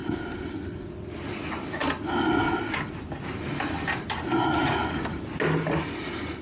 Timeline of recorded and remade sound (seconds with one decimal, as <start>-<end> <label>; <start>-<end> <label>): 0.0-6.4 recorded